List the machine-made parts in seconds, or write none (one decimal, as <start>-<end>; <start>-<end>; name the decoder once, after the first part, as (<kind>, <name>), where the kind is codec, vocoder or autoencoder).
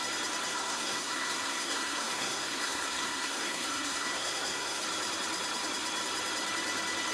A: 0.5-4.8 (codec, SNAC)